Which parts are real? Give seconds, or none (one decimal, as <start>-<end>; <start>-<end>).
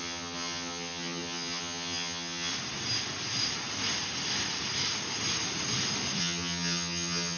2.5-6.2